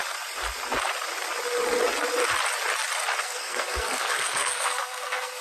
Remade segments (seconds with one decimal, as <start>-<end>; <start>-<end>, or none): 3.2-5.4